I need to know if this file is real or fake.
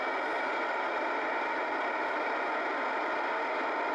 real